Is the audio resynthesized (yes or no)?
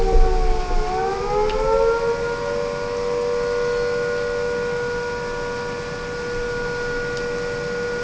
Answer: no